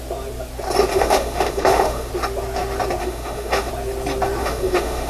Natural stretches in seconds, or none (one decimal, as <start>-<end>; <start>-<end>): 0.0-0.9; 2.1-3.0; 3.7-4.4